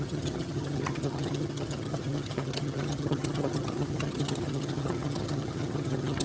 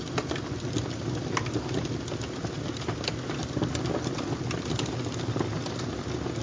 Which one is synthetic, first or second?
first